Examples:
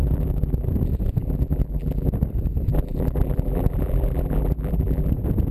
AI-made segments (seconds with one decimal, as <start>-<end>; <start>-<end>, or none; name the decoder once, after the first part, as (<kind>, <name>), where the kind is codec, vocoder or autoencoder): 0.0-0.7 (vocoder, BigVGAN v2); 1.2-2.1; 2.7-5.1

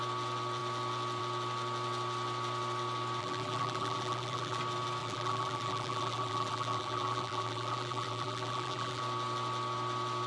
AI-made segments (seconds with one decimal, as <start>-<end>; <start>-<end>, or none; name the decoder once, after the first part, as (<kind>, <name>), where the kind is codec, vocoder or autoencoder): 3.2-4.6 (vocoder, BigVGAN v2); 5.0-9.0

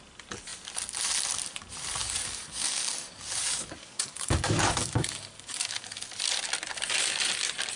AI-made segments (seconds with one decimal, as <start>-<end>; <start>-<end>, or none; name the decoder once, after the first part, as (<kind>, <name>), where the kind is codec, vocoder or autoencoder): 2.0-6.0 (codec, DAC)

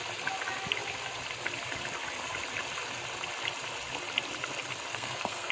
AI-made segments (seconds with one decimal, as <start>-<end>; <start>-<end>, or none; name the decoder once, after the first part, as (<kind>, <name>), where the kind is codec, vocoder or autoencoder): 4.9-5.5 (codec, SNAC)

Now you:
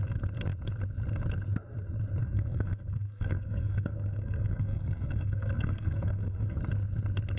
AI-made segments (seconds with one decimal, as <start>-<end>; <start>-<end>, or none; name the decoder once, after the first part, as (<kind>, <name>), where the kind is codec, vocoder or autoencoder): 2.2-6.6 (codec, SNAC)

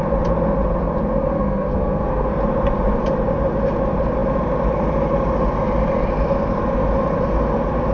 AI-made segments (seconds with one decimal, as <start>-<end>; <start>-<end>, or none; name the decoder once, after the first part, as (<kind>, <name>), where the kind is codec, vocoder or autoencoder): 1.3-2.3 (codec, SNAC)

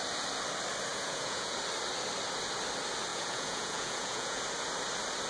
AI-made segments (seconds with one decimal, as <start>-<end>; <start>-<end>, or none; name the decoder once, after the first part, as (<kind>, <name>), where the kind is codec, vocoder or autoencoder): 0.9-1.6 (vocoder, Vocos); 3.1-4.4